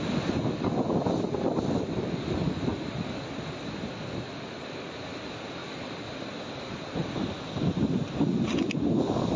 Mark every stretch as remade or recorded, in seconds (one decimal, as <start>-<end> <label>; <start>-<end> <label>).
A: 0.0-2.7 recorded; 2.7-5.0 remade; 5.0-5.6 recorded; 5.6-6.9 remade; 6.9-9.4 recorded